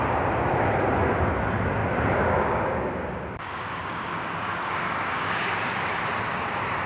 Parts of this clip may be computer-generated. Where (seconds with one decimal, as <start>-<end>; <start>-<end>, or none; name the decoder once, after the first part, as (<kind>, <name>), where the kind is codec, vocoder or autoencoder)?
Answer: 1.8-5.9 (codec, DAC)